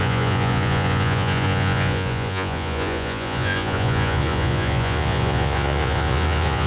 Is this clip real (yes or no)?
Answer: no